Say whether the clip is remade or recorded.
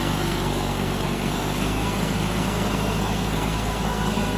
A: remade